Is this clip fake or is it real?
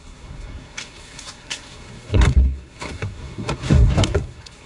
fake